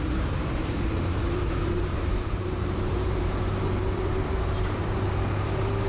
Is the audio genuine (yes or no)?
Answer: no